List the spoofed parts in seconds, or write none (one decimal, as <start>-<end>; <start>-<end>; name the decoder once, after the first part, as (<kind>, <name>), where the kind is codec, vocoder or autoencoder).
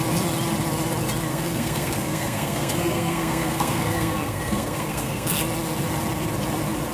1.3-5.4 (codec, SNAC)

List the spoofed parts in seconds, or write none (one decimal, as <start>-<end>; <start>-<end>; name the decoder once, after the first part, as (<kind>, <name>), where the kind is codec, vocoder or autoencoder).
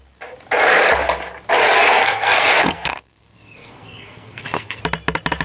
1.6-4.8 (codec, SNAC)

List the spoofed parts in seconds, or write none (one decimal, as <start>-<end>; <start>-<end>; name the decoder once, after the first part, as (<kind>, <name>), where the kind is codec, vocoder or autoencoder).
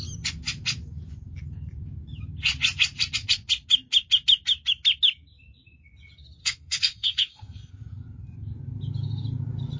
6.4-7.7 (codec, SNAC)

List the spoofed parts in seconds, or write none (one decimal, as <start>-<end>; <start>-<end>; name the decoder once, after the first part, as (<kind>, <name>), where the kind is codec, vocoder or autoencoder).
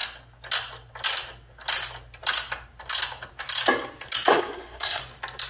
4.3-5.0 (codec, SNAC)